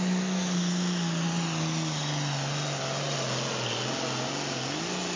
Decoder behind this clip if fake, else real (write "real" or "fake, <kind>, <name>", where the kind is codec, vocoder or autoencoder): real